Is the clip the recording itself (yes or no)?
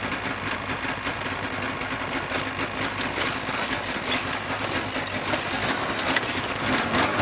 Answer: yes